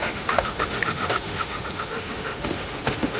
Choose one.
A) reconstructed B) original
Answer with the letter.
A